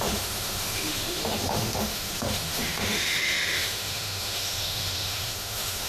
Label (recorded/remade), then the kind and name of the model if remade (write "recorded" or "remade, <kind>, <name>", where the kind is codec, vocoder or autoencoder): remade, autoencoder, DAC-VAE